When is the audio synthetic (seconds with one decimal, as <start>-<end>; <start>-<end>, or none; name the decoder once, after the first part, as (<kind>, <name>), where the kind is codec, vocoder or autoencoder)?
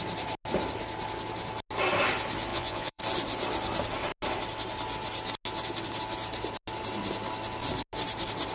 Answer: 2.5-3.0 (vocoder, Vocos)